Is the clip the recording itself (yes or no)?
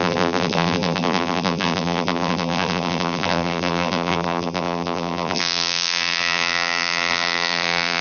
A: no